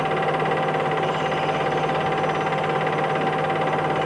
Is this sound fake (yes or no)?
no